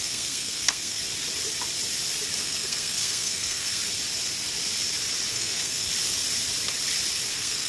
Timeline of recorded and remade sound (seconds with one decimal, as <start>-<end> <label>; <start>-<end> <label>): 0.0-1.0 remade; 1.0-2.4 recorded; 2.4-3.8 remade; 3.8-5.3 recorded; 5.3-5.9 remade; 5.9-7.3 recorded; 7.3-7.7 remade